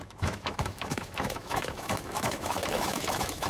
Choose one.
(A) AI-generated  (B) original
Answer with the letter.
A